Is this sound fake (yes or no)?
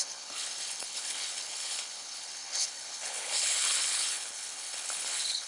yes